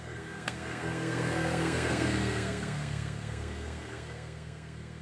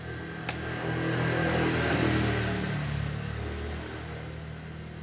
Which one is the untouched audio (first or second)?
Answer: second